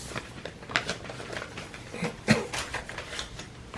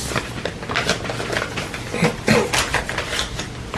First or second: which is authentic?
second